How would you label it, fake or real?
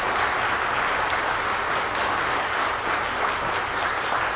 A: real